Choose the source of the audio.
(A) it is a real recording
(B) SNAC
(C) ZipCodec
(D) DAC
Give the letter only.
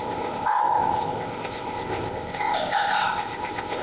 C